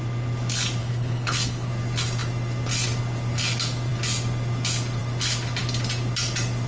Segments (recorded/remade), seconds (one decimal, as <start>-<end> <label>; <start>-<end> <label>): 0.0-0.8 recorded; 0.8-1.7 remade; 1.7-6.7 recorded

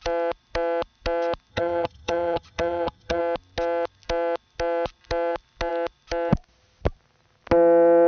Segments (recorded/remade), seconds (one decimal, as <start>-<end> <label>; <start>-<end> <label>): 0.0-1.5 recorded; 1.5-3.2 remade; 3.2-8.1 recorded